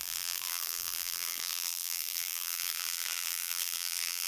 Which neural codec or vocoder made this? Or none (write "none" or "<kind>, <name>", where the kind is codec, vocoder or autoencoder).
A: vocoder, BigVGAN v2